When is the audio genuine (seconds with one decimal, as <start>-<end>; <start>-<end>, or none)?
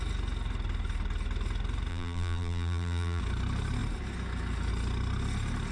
0.0-1.9; 3.2-5.7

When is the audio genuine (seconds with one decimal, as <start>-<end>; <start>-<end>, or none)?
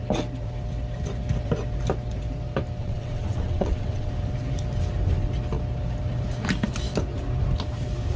0.0-2.8; 4.1-8.2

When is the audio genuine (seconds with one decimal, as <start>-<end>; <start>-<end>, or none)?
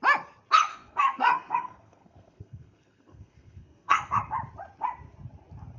0.0-0.7; 4.2-5.8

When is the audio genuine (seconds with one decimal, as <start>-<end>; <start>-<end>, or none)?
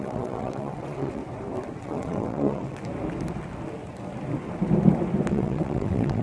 1.2-1.8; 2.8-5.3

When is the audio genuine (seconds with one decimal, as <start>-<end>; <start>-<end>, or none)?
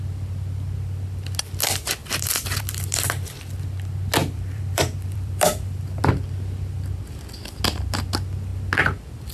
0.0-2.0; 3.4-4.2; 6.0-9.3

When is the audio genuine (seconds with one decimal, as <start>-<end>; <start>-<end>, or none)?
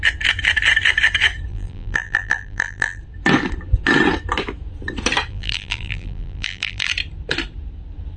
0.0-1.5; 3.0-5.3; 6.9-8.2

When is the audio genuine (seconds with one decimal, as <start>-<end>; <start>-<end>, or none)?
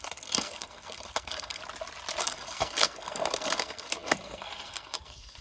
1.6-2.2